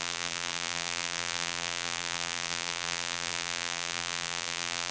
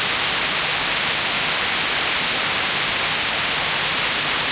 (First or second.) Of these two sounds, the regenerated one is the first